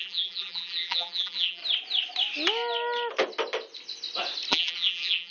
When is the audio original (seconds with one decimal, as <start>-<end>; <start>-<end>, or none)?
1.6-4.5